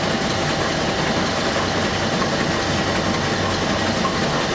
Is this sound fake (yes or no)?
no